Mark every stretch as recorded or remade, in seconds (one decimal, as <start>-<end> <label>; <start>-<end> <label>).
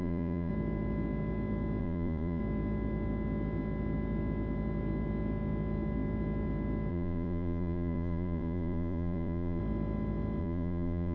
0.0-0.5 remade; 0.5-1.8 recorded; 1.8-2.4 remade; 2.4-6.9 recorded; 6.9-9.6 remade; 9.6-10.4 recorded; 10.4-11.1 remade